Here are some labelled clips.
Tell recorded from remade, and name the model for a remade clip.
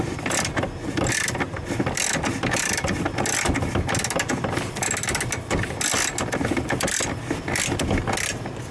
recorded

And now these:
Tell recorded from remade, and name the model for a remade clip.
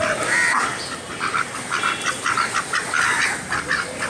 recorded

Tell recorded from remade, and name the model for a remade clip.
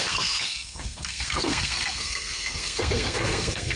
remade, codec, SNAC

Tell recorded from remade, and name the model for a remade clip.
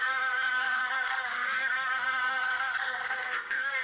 remade, codec, SNAC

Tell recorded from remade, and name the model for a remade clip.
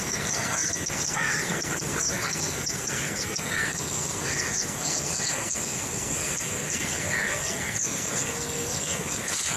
remade, codec, SNAC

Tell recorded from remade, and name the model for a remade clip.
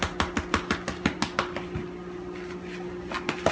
recorded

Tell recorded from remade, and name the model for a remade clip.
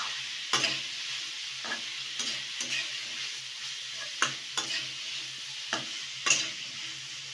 recorded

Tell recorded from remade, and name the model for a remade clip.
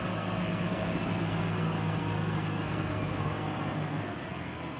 remade, codec, SNAC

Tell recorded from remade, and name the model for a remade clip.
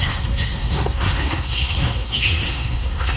remade, codec, SNAC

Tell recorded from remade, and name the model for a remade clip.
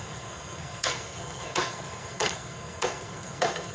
remade, codec, SNAC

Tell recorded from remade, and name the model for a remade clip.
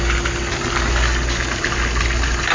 recorded